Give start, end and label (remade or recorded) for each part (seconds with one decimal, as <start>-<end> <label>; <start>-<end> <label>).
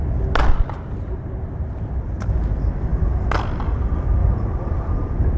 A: 0.0-0.5 recorded; 0.5-2.3 remade; 2.3-4.2 recorded; 4.2-4.9 remade; 4.9-5.4 recorded